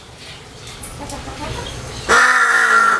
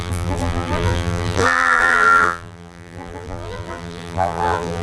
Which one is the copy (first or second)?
second